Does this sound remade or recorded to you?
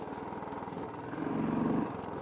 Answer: recorded